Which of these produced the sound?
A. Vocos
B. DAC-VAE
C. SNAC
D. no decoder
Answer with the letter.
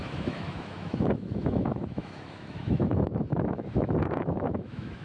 B